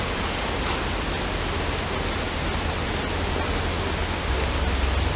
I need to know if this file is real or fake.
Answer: real